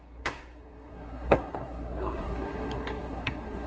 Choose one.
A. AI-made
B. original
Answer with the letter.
A